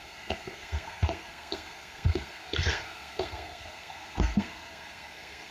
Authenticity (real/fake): fake